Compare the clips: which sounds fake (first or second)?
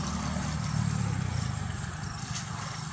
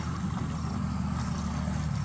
first